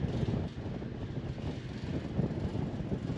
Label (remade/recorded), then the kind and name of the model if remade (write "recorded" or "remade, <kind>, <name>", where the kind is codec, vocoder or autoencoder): recorded